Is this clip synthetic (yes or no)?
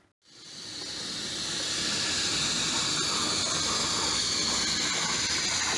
no